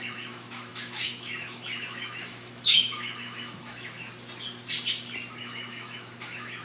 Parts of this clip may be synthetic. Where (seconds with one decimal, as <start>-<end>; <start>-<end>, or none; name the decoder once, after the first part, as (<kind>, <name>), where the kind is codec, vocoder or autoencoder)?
0.0-4.1 (autoencoder, DAC-VAE); 5.4-6.6